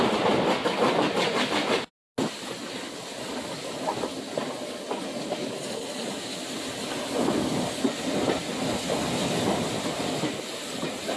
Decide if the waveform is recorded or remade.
recorded